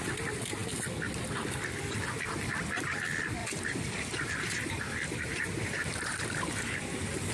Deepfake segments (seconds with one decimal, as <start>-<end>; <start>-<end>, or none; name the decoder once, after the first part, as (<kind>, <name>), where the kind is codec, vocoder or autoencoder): 3.4-7.3 (vocoder, BigVGAN v2)